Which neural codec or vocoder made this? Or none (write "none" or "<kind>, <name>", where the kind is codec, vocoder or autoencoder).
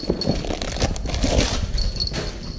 none